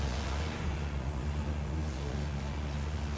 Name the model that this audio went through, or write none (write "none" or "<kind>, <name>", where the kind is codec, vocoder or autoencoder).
vocoder, Vocos